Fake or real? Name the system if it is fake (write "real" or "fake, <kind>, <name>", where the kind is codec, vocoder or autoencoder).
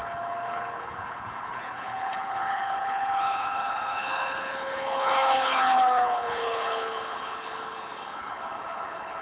fake, codec, HILCodec